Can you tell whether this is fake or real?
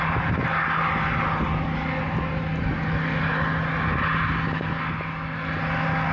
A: real